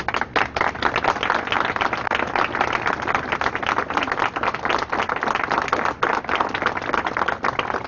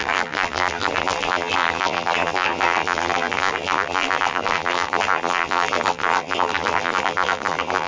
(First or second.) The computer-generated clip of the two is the second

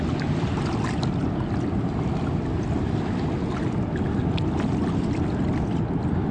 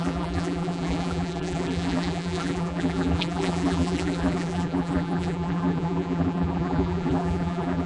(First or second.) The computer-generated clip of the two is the second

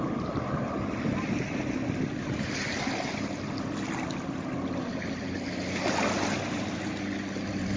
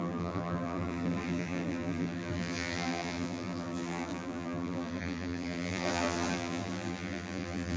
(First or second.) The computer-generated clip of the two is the second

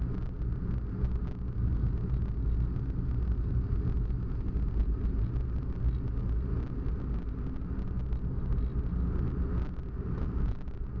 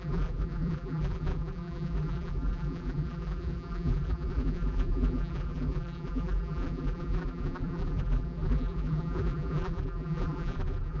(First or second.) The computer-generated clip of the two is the second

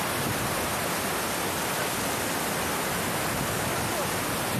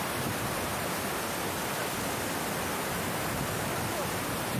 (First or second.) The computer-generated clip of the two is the second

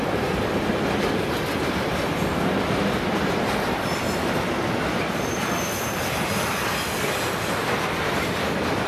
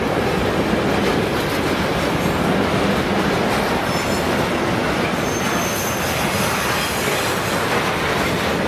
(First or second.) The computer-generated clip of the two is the first